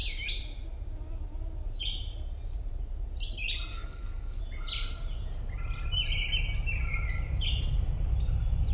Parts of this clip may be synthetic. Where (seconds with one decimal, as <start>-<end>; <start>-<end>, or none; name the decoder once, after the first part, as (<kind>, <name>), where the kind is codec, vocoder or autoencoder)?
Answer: 3.7-4.4 (codec, SNAC)